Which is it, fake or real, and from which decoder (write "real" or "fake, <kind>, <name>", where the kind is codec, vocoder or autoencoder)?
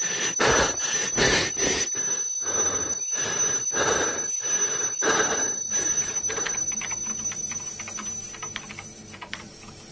fake, vocoder, BigVGAN v2